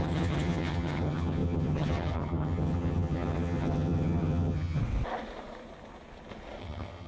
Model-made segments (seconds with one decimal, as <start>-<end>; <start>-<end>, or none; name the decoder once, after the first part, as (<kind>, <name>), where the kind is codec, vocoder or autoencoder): 0.0-4.8 (vocoder, HiFi-GAN); 6.6-7.1